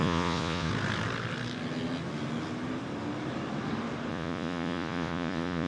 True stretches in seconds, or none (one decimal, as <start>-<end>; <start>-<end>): 0.7-4.1